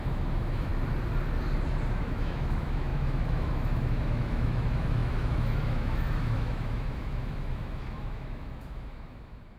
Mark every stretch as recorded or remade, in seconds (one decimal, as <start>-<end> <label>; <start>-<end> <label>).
0.0-0.7 remade; 0.7-2.0 recorded; 2.0-9.6 remade